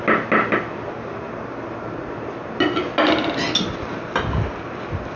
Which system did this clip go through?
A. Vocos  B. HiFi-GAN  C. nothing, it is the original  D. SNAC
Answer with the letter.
C